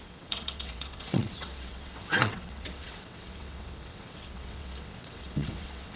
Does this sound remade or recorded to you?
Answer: remade